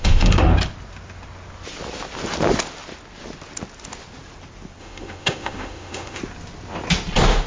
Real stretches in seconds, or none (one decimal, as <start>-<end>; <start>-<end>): 0.5-4.8; 6.2-7.5